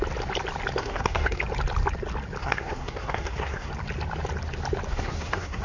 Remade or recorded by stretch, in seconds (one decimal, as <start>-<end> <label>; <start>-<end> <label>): 0.0-0.8 recorded; 0.8-1.4 remade; 1.4-2.4 recorded; 2.4-3.7 remade; 3.7-4.9 recorded; 4.9-5.6 remade